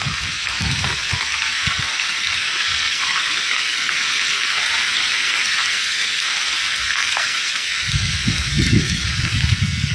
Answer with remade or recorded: remade